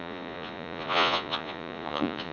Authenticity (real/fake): fake